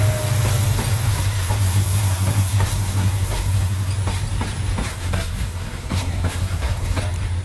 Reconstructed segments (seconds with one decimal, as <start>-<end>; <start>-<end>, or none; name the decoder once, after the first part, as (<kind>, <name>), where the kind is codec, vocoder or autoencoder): 1.1-3.9 (codec, SNAC); 4.9-7.0